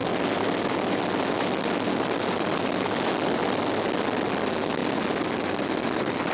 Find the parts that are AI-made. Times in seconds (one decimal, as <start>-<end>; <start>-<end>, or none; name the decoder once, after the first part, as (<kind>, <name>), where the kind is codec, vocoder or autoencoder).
none